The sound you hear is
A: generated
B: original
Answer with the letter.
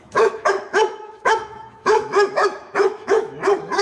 A